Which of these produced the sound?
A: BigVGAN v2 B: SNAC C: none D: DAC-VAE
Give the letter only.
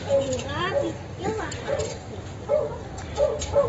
C